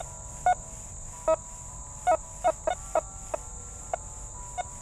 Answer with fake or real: real